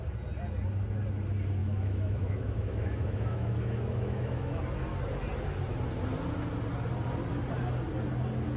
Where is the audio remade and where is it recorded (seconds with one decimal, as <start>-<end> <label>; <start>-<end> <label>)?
0.0-1.6 recorded; 1.6-4.6 remade; 4.6-8.6 recorded

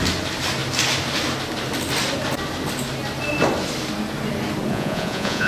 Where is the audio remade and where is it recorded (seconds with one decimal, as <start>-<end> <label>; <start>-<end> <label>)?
0.0-4.7 recorded; 4.7-5.5 remade